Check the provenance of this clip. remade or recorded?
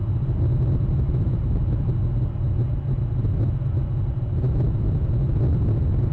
recorded